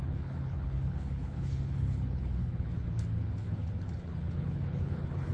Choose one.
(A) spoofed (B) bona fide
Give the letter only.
A